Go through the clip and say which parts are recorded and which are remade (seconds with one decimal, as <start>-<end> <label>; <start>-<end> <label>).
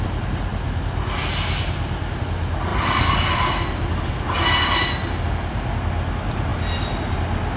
0.0-7.6 recorded